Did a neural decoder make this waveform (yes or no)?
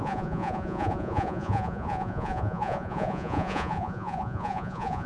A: yes